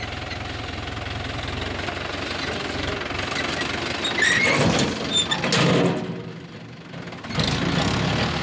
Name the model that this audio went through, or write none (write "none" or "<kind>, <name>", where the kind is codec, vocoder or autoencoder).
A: none